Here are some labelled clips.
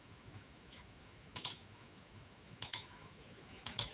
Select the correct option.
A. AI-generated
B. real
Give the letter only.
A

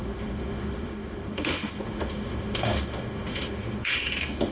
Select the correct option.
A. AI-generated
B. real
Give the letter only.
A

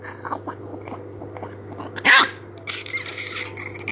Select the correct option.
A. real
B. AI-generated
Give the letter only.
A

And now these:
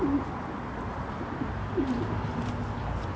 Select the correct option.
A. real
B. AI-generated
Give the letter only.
A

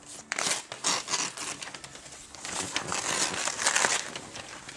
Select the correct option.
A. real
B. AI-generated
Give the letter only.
A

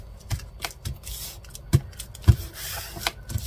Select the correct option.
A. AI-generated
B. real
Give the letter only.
B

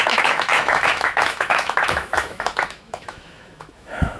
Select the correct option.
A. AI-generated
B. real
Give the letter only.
A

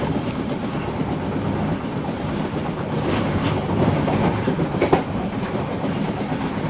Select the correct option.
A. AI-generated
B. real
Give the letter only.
B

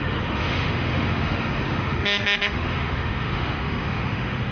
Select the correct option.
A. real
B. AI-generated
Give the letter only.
B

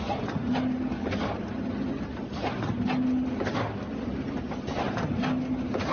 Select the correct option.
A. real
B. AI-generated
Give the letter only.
A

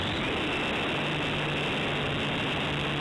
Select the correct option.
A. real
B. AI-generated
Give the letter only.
A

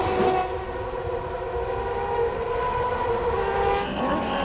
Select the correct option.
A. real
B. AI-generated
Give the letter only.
A